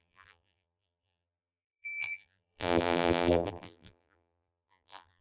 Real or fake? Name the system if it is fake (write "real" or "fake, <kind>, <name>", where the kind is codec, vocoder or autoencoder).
fake, vocoder, BigVGAN v2